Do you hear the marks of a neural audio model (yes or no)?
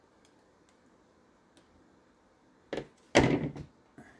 no